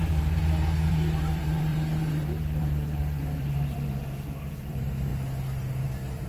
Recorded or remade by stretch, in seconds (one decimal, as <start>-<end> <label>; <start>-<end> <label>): 0.0-0.4 remade; 0.4-0.9 recorded; 0.9-5.1 remade; 5.1-5.8 recorded; 5.8-6.3 remade